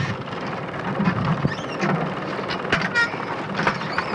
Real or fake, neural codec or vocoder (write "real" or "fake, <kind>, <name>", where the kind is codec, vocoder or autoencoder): real